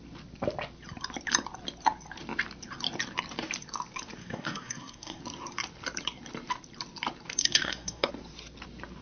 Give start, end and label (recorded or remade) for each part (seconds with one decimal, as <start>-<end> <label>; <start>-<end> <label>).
0.0-4.2 recorded; 4.2-5.2 remade; 5.2-7.4 recorded; 7.4-8.1 remade; 8.1-9.0 recorded